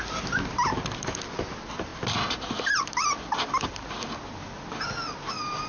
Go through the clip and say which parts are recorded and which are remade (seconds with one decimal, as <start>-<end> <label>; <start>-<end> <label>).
0.0-5.7 recorded